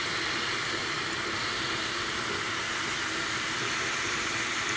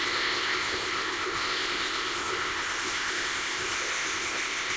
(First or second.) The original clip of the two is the first